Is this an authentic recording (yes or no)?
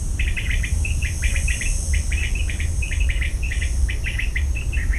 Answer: no